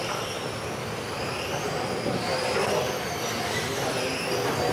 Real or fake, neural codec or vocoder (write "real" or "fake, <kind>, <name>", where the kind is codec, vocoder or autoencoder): real